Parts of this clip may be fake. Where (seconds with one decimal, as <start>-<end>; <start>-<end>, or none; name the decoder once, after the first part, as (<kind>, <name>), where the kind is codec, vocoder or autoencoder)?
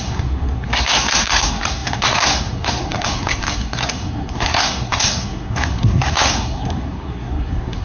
0.0-7.8 (codec, SNAC)